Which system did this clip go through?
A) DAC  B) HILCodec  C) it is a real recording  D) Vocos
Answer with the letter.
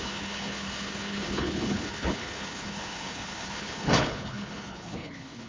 B